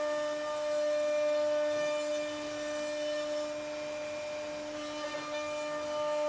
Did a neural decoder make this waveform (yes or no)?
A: no